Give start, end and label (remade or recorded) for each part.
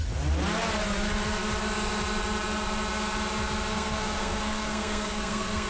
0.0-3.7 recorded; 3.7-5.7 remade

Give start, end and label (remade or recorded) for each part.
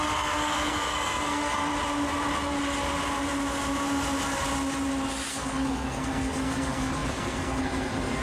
0.0-1.7 remade; 1.7-5.3 recorded; 5.3-8.2 remade